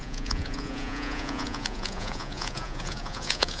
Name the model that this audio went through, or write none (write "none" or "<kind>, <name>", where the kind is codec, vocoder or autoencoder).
vocoder, Vocos